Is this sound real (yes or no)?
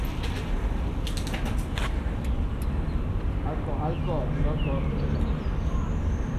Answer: yes